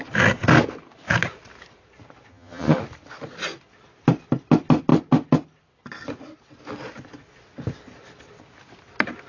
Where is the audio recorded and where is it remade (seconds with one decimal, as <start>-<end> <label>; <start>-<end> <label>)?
0.0-2.3 recorded; 2.3-2.8 remade; 2.8-9.3 recorded